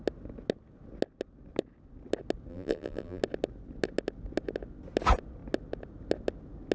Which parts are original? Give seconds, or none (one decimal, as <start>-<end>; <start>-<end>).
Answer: 0.0-2.5; 3.2-6.7